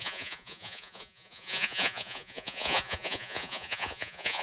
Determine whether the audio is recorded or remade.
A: remade